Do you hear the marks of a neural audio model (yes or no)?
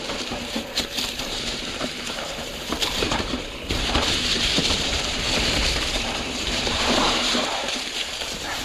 yes